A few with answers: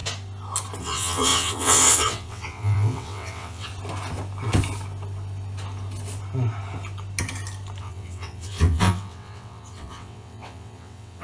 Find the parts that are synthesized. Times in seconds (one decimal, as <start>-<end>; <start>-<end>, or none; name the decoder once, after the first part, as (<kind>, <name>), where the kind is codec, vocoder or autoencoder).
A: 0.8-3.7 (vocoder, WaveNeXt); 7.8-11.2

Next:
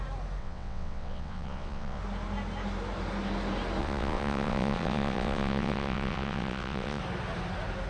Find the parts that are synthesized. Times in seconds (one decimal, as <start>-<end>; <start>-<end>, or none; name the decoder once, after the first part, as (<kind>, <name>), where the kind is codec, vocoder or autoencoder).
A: 0.4-2.0 (vocoder, WaveNeXt); 3.8-7.0

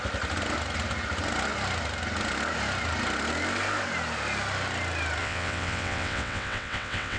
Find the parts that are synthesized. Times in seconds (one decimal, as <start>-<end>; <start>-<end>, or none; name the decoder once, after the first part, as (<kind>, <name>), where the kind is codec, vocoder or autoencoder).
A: 5.2-7.2 (vocoder, WaveNeXt)